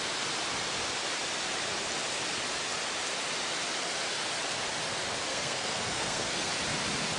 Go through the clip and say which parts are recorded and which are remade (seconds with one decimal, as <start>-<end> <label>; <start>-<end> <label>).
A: 0.0-5.3 recorded; 5.3-6.5 remade; 6.5-7.2 recorded